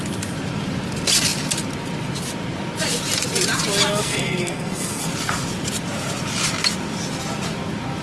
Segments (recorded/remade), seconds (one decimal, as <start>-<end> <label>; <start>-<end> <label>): 0.0-3.9 recorded; 3.9-5.1 remade; 5.1-8.0 recorded